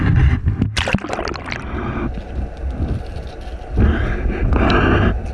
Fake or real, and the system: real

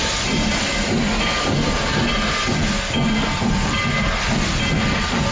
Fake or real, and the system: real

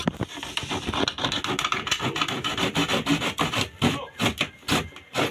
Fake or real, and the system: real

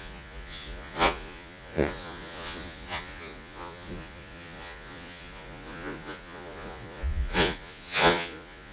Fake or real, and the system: fake, vocoder, Vocos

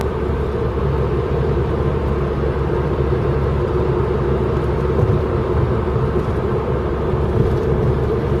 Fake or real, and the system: fake, vocoder, BigVGAN v2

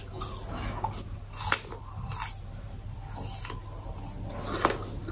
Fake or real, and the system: real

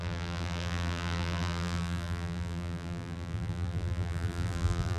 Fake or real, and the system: fake, vocoder, BigVGAN v2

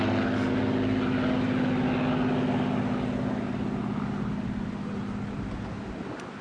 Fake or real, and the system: real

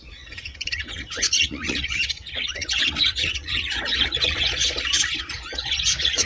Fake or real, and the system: fake, vocoder, Vocos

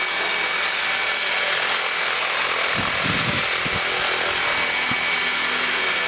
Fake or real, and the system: real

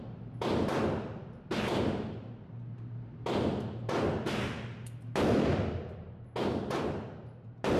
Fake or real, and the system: real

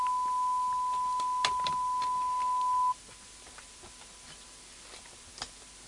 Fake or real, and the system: real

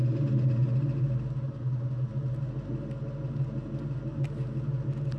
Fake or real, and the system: real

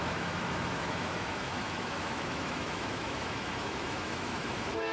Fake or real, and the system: fake, autoencoder, DAC-VAE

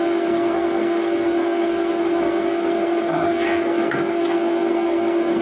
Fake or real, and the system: fake, codec, SNAC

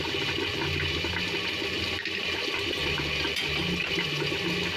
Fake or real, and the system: real